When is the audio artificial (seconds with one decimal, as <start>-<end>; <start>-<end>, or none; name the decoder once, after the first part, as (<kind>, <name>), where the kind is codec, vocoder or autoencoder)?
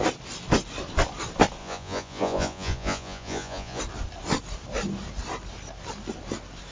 1.6-3.8 (vocoder, Vocos)